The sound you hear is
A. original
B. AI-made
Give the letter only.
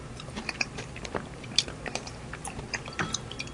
B